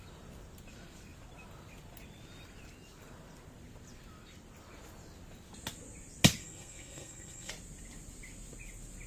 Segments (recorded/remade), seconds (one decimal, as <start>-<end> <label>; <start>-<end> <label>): 0.0-6.4 recorded; 6.4-7.5 remade; 7.5-9.1 recorded